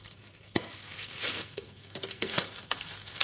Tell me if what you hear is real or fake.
fake